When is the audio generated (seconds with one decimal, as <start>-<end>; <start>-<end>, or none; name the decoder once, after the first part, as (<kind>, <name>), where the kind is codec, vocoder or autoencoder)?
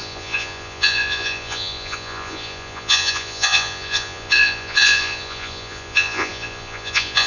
0.0-7.3 (vocoder, Vocos)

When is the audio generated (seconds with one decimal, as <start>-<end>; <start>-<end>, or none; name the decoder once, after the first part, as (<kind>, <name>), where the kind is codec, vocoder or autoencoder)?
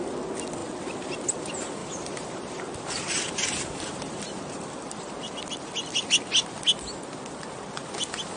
1.8-5.4 (vocoder, BigVGAN v2)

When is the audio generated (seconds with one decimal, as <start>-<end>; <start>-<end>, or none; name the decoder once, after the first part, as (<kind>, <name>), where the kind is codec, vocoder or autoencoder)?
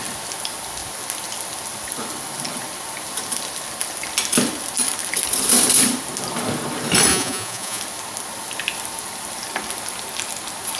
7.1-7.8 (vocoder, Vocos)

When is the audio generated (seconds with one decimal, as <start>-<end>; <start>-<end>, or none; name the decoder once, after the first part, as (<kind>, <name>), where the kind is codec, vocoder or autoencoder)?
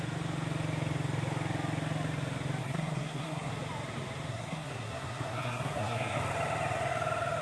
2.6-3.5 (codec, SNAC); 4.3-6.2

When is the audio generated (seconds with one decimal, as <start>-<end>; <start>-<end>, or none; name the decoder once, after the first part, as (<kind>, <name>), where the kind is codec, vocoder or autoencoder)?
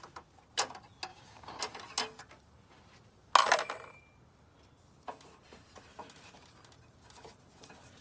1.1-1.6 (codec, DAC)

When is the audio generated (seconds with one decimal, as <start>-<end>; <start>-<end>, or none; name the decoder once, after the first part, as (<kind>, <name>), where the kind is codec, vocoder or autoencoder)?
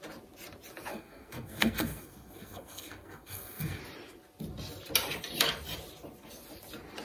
0.9-3.8 (codec, SNAC)